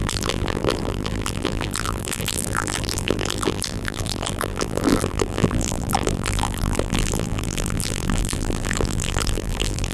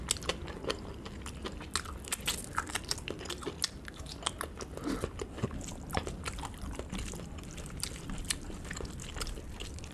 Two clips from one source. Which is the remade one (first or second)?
first